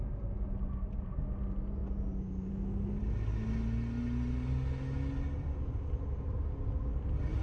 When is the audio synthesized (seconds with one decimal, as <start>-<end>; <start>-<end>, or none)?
none